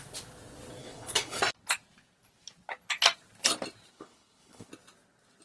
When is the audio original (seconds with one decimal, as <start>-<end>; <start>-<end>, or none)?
0.0-0.8; 1.4-3.9; 4.7-5.4